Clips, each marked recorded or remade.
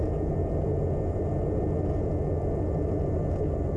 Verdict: recorded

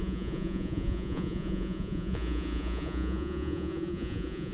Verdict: remade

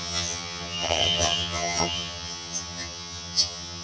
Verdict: remade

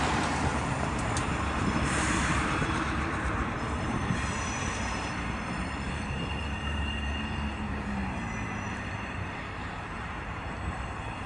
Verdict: remade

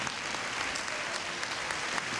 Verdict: recorded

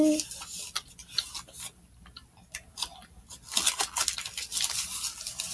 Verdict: recorded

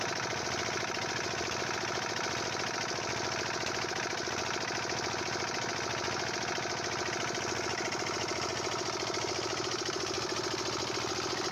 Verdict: recorded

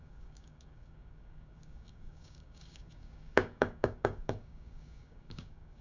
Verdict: remade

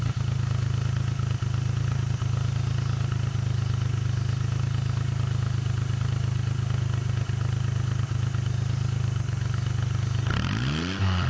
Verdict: recorded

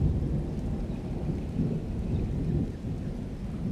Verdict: recorded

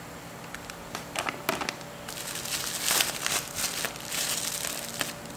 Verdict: recorded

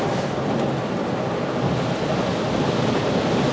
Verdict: recorded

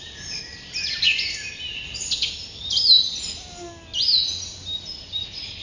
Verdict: recorded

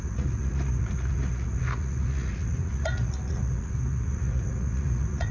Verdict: remade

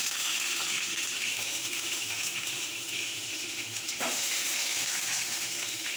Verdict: remade